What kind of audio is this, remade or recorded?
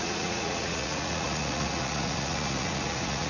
remade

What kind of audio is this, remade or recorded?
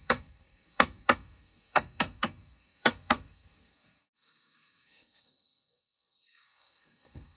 remade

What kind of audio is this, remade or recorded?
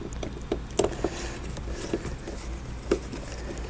recorded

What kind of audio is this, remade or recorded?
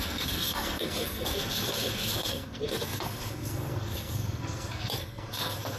remade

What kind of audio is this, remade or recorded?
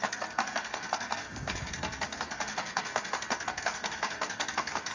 remade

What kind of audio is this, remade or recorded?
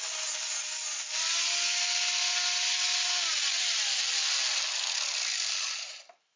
recorded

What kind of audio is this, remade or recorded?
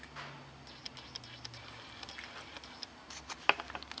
recorded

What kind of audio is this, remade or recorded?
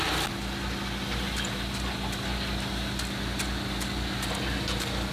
recorded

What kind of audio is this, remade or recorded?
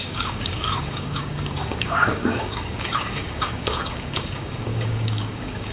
remade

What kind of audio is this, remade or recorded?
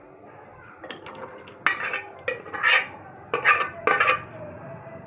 recorded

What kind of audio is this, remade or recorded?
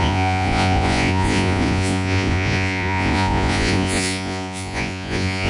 remade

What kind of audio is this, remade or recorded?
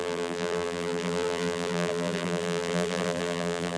remade